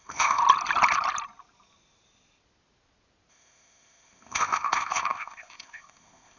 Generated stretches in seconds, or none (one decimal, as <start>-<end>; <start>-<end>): 0.0-0.4; 3.3-6.4